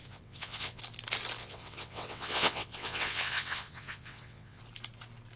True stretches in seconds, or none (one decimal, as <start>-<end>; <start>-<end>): 0.8-1.4; 4.6-5.4